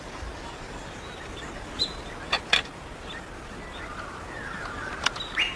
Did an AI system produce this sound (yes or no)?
no